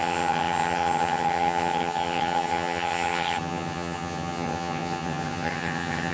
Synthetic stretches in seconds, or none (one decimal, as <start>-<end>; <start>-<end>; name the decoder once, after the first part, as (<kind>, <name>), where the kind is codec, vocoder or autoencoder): 0.0-6.1 (vocoder, HiFi-GAN)

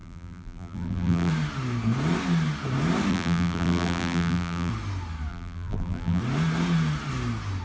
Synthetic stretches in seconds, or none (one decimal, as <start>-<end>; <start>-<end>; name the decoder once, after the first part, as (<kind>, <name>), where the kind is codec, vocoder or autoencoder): 0.0-1.3 (vocoder, BigVGAN v2); 3.1-4.7; 5.3-6.2

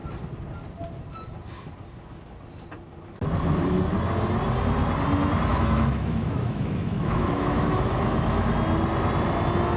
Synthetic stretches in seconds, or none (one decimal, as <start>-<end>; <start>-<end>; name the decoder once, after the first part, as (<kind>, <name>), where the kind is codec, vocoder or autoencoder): 5.5-8.5 (autoencoder, DAC-VAE)

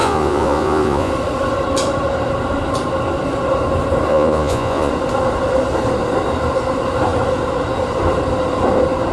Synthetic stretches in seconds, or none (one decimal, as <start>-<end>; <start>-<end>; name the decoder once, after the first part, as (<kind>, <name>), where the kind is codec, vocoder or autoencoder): 0.0-1.1 (vocoder, Vocos); 4.1-4.9

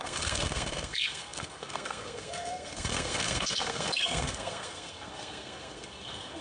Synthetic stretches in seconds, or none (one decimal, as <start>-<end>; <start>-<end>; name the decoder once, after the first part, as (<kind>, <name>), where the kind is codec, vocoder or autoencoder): 0.0-6.4 (codec, SNAC)

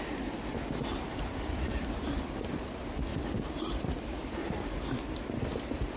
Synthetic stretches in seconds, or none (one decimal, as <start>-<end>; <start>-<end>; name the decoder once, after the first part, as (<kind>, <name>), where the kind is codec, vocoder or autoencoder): 1.1-1.6 (vocoder, BigVGAN v2); 4.4-5.1

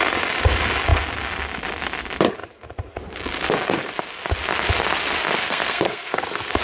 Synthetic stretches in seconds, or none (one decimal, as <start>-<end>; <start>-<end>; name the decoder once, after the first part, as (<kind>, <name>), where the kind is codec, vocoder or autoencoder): 5.4-6.6 (codec, SNAC)